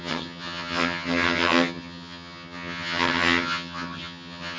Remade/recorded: remade